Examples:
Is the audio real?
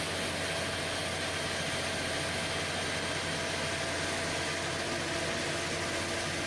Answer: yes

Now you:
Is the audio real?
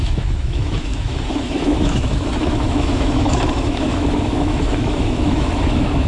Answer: no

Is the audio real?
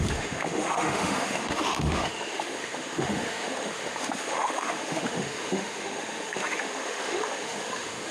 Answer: no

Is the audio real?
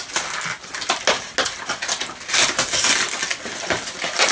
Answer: yes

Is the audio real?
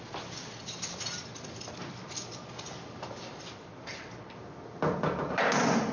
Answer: yes